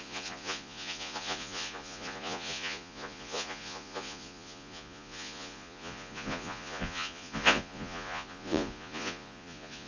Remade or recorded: remade